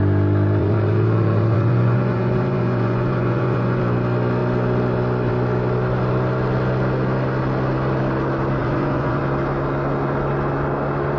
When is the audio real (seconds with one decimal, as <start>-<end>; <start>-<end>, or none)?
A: 0.0-0.6; 3.8-8.6; 9.2-11.2